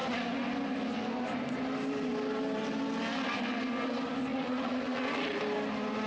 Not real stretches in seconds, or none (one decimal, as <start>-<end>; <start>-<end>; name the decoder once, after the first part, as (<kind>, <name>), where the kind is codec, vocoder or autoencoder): 4.3-5.4 (vocoder, Vocos)